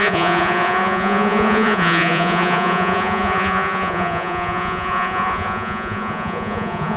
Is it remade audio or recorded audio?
remade